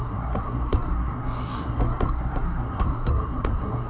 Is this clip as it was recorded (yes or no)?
no